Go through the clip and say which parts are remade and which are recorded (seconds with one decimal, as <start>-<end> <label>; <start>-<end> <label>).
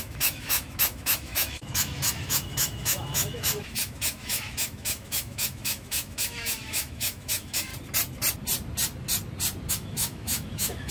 0.0-7.7 remade; 7.7-9.7 recorded; 9.7-10.9 remade